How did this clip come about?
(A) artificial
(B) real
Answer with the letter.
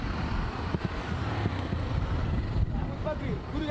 A